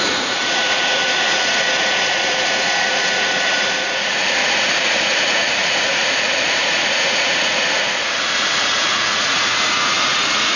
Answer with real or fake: fake